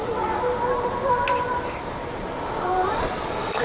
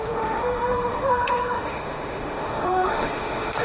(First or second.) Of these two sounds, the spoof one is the second